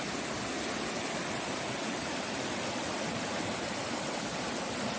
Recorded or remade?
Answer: recorded